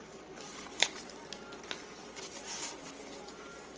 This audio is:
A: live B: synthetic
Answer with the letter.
A